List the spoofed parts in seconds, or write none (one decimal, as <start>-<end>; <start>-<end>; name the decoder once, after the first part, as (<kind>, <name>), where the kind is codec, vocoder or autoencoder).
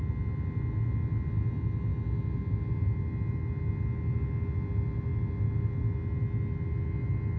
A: none